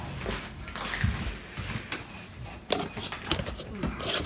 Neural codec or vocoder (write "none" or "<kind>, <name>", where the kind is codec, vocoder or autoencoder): none